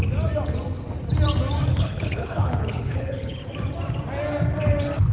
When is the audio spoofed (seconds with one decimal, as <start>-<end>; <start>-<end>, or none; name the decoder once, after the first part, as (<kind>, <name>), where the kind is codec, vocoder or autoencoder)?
1.7-3.4 (codec, HILCodec)